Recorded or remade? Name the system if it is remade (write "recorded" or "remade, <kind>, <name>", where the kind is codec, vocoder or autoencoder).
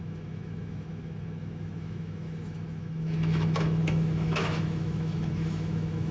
remade, autoencoder, DAC-VAE